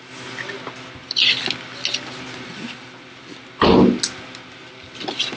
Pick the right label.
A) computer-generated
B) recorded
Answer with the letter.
B